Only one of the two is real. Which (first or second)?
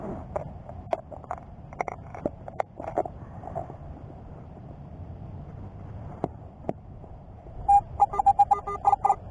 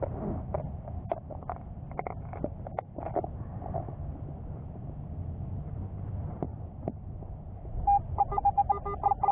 second